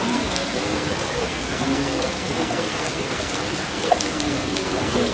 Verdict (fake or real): fake